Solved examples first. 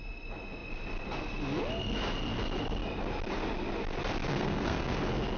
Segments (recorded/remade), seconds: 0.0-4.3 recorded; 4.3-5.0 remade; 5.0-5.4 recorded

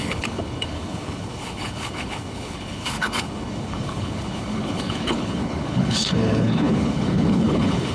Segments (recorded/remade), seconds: 0.0-7.9 remade